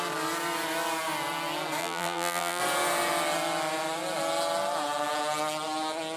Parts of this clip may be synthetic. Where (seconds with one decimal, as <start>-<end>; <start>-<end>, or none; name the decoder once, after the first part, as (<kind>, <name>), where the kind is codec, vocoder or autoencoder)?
1.8-2.6 (vocoder, BigVGAN v2)